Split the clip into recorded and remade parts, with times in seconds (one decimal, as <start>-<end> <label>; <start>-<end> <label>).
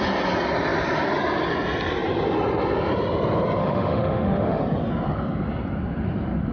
0.0-3.6 recorded; 3.6-4.6 remade; 4.6-6.5 recorded